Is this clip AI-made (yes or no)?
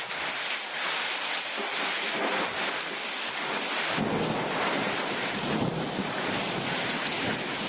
no